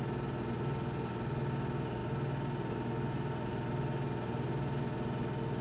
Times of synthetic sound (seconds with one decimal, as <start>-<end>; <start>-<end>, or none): none